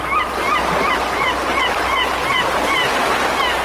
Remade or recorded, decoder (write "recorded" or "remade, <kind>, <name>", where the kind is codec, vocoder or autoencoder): recorded